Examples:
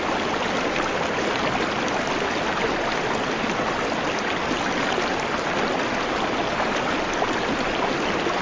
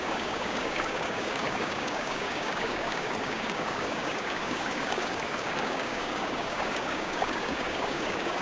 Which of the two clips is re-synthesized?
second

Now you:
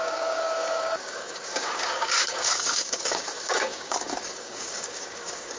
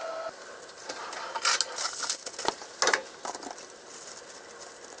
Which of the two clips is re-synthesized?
first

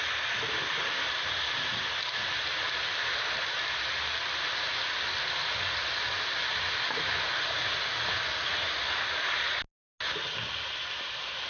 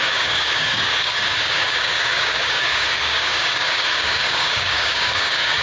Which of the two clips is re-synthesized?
second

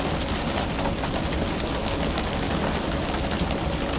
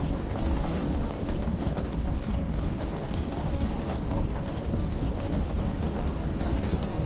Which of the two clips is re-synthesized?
second